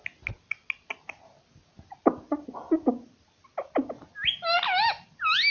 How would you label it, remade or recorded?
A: recorded